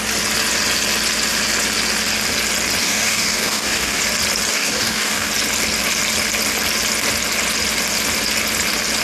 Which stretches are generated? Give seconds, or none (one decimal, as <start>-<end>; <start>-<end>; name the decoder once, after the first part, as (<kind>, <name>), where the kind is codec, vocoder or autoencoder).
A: 2.8-4.0 (codec, DAC); 4.5-5.3